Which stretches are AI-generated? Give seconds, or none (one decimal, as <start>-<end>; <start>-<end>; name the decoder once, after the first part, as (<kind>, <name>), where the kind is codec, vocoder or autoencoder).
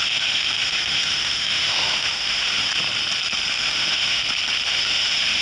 0.0-2.7 (autoencoder, DAC-VAE); 3.5-4.2; 4.7-5.4